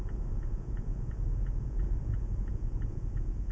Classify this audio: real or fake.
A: fake